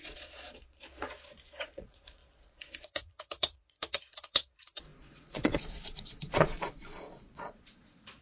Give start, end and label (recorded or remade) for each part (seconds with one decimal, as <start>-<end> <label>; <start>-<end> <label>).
0.0-8.2 remade